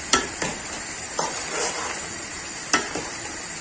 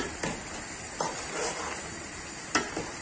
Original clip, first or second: second